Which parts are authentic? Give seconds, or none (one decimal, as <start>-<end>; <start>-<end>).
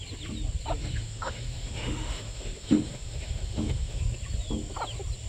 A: 0.0-0.8; 4.0-5.3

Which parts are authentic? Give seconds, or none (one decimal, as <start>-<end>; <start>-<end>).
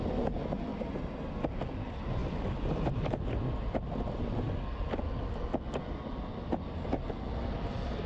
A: 0.0-8.1